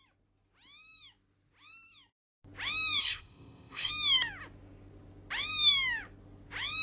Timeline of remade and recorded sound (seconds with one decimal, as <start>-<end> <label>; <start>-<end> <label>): 0.0-3.0 recorded; 3.0-3.9 remade; 3.9-6.8 recorded